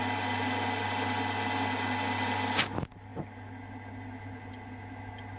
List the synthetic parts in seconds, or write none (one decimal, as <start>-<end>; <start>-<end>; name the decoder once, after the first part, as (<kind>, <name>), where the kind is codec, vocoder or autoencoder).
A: none